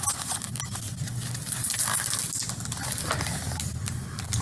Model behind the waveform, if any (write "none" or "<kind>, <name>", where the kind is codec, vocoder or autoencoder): none